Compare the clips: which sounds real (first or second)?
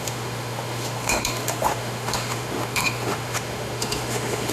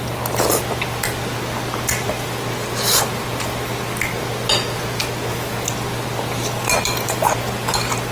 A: second